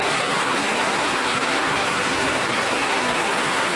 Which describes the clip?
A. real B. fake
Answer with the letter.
B